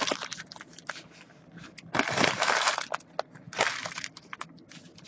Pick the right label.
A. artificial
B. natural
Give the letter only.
B